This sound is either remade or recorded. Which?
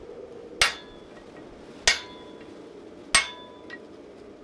recorded